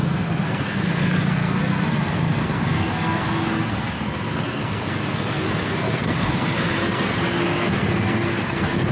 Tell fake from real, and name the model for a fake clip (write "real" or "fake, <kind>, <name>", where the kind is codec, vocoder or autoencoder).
fake, codec, SNAC